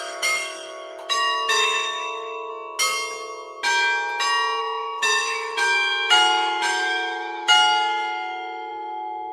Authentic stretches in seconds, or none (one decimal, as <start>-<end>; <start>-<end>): 2.5-4.6